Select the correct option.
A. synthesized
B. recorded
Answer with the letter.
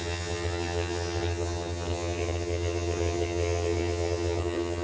A